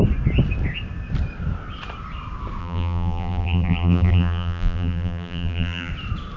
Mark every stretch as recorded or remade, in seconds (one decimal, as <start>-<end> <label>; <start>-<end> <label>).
0.0-2.6 recorded; 2.6-5.9 remade; 5.9-6.4 recorded